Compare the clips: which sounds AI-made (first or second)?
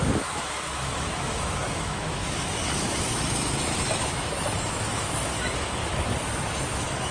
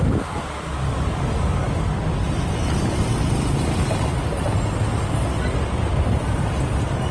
first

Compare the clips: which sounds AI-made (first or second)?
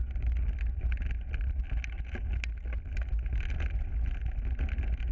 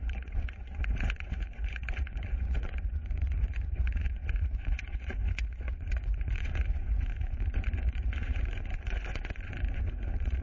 second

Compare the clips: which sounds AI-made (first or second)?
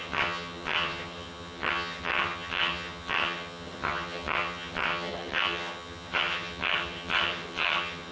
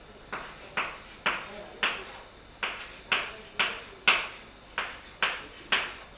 first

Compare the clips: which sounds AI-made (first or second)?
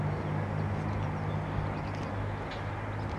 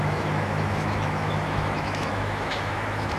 second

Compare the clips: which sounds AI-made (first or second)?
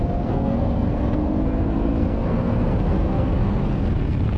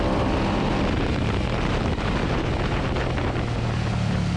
first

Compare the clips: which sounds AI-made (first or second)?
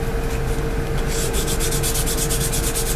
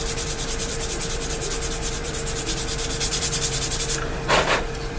second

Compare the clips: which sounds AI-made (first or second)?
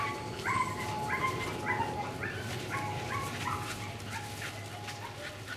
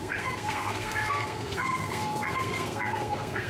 second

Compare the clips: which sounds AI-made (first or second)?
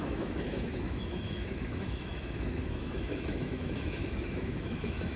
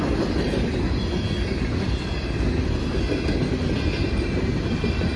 first